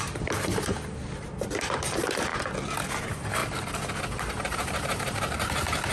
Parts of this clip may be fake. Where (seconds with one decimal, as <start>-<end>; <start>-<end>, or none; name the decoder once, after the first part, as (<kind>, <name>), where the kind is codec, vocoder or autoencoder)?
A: 0.0-2.3 (vocoder, BigVGAN v2); 3.0-3.4; 4.3-5.9